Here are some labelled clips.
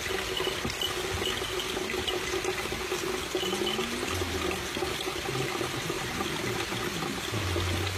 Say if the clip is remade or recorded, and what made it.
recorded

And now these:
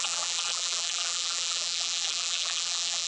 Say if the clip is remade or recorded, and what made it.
remade, vocoder, BigVGAN v2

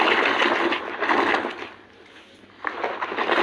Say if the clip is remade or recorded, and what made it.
recorded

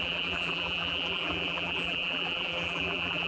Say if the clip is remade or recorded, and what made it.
remade, vocoder, BigVGAN v2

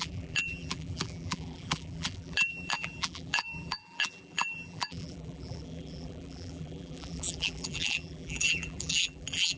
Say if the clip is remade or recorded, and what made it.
remade, vocoder, BigVGAN v2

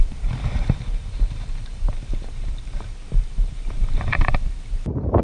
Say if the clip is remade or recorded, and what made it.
remade, vocoder, BigVGAN v2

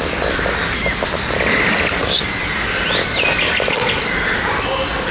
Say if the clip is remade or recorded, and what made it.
recorded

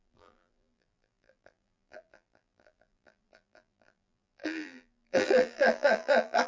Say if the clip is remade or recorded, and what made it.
remade, vocoder, BigVGAN v2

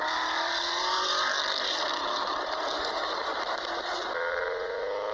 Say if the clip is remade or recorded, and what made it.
remade, vocoder, BigVGAN v2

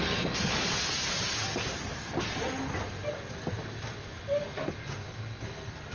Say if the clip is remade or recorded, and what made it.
recorded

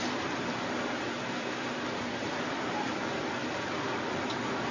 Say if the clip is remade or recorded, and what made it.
remade, vocoder, BigVGAN v2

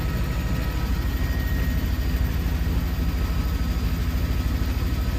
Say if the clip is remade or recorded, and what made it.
recorded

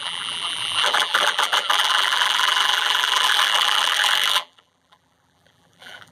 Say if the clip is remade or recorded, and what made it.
remade, vocoder, BigVGAN v2